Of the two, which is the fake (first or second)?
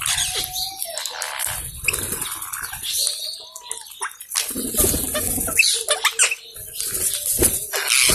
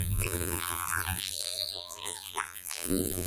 second